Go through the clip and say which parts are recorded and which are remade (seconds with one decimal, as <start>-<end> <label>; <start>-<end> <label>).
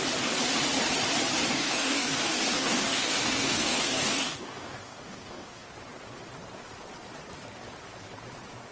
0.0-1.5 recorded; 1.5-5.7 remade; 5.7-8.7 recorded